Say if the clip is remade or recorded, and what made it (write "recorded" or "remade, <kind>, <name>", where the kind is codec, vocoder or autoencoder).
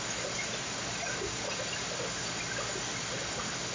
recorded